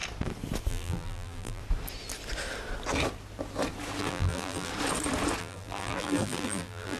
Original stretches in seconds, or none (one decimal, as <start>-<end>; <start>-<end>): 0.0-0.7; 1.6-4.0; 4.7-5.4